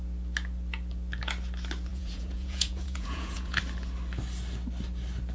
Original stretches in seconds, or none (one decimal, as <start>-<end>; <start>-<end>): 0.0-1.9; 3.6-5.3